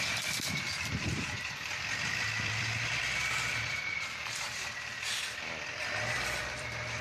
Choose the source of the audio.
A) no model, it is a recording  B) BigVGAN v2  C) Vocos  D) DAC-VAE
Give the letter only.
B